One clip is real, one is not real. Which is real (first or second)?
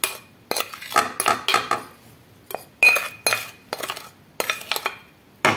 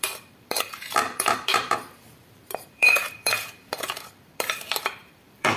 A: first